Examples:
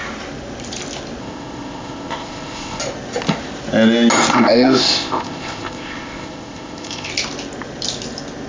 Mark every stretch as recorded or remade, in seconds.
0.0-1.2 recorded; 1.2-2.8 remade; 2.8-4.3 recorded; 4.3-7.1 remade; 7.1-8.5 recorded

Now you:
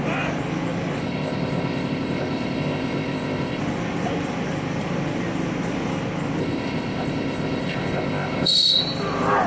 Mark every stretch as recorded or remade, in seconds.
0.0-1.0 recorded; 1.0-3.6 remade; 3.6-6.4 recorded; 6.4-8.8 remade; 8.8-9.5 recorded